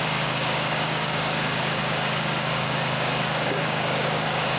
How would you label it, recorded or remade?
remade